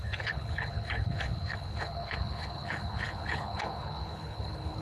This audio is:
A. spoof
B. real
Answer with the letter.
A